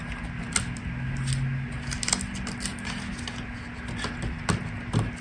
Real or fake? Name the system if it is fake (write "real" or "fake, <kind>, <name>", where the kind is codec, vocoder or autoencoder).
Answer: real